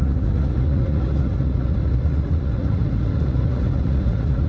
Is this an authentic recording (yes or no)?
no